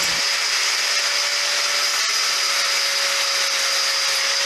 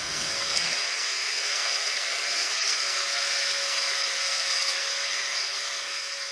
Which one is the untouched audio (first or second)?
first